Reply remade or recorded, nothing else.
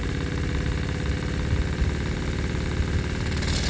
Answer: recorded